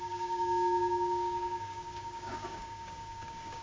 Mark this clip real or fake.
fake